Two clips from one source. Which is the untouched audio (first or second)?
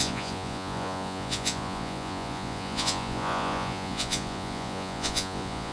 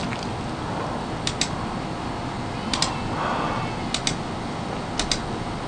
second